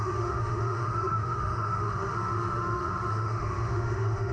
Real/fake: fake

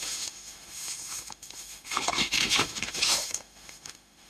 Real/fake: fake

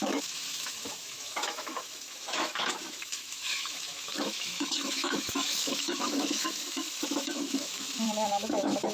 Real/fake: fake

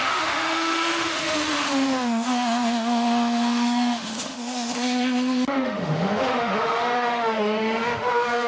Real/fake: fake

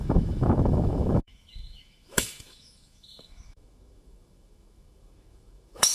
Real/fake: fake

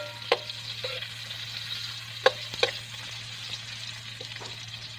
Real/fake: real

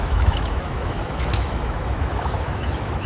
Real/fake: fake